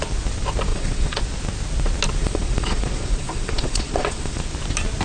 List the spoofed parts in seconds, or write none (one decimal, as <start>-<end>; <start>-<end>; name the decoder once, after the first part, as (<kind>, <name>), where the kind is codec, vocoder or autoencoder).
0.7-1.2 (vocoder, Vocos); 2.2-4.4